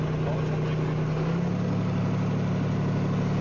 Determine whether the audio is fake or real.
real